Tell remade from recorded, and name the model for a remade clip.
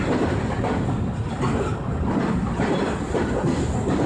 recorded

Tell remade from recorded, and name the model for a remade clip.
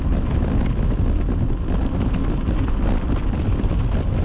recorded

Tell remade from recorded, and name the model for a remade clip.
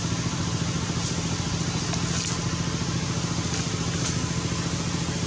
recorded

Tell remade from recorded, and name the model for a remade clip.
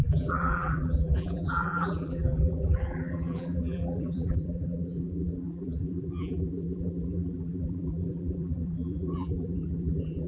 remade, vocoder, BigVGAN v2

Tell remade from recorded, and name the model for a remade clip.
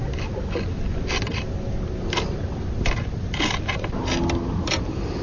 recorded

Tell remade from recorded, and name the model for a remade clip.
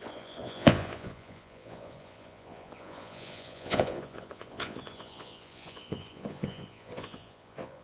remade, vocoder, Vocos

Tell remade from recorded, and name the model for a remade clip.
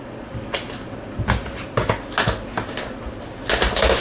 recorded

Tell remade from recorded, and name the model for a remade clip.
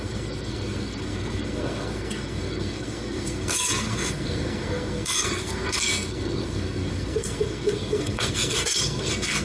remade, codec, SNAC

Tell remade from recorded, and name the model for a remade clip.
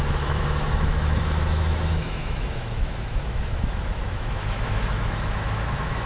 remade, autoencoder, DAC-VAE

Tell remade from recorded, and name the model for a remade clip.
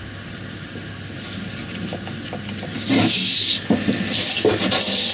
recorded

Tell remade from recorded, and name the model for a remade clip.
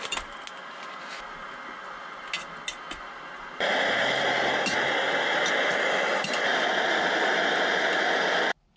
recorded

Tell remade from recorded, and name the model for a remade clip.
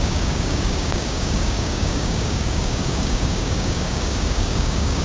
remade, codec, DAC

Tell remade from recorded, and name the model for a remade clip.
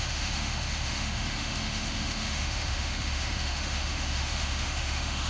remade, autoencoder, DAC-VAE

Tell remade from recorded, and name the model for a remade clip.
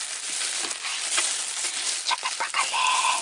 recorded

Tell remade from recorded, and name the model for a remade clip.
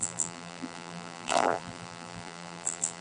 remade, vocoder, BigVGAN v2